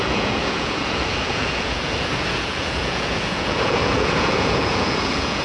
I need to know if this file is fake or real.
fake